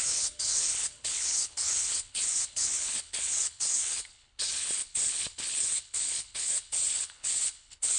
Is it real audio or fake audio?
fake